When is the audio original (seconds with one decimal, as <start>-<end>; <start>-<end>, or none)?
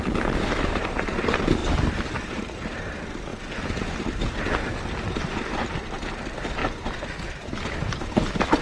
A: 1.6-2.2; 3.3-4.0; 6.6-7.7